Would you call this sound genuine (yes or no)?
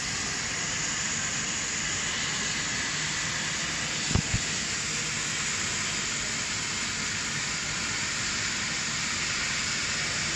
yes